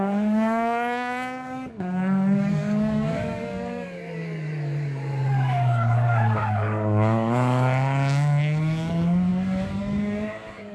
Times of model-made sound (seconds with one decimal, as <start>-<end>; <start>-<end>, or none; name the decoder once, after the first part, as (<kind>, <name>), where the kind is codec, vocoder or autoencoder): 0.0-10.7 (codec, DAC)

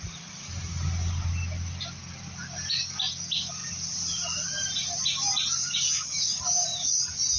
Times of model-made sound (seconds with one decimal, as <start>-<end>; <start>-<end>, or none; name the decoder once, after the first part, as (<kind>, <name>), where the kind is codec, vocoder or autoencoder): 5.6-6.4 (codec, DAC)